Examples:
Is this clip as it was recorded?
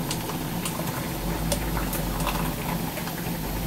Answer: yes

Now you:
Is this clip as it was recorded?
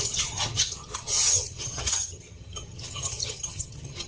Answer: no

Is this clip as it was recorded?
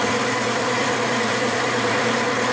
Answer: no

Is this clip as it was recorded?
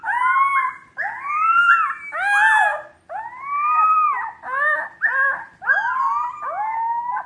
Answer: yes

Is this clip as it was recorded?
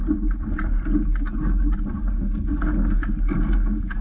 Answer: yes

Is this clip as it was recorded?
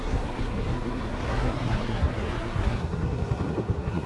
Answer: no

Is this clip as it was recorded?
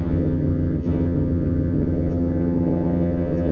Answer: no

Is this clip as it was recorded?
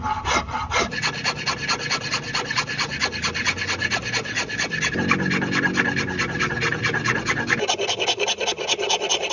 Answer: yes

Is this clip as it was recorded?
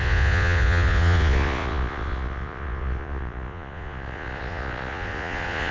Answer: no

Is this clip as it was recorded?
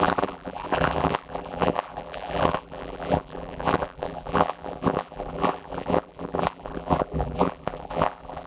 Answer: no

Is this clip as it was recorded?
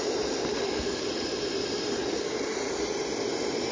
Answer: no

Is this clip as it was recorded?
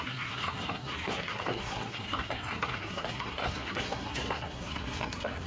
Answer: no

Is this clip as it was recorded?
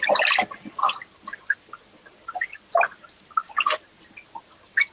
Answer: yes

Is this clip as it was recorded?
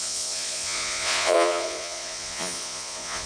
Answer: no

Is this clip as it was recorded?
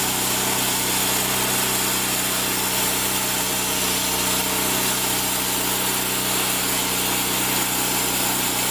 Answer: yes